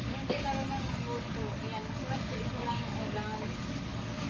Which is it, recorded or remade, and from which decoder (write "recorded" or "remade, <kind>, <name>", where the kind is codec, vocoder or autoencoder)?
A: remade, codec, DAC